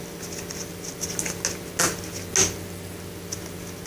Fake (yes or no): no